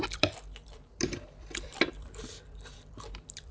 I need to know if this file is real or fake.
fake